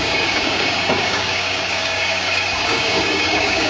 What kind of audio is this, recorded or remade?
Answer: remade